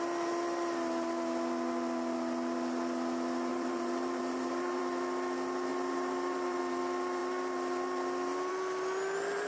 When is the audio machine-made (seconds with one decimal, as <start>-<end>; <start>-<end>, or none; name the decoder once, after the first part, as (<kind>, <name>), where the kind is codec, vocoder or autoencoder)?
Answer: 3.5-4.8 (vocoder, BigVGAN v2); 5.7-6.6